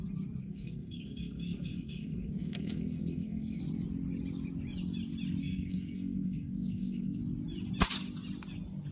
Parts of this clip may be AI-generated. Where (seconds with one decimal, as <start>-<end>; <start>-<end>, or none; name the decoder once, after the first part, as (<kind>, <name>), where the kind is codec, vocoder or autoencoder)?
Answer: 0.4-3.6 (codec, SNAC); 5.4-7.2